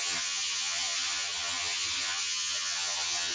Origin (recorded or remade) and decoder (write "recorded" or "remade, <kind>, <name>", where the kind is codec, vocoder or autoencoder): remade, vocoder, HiFi-GAN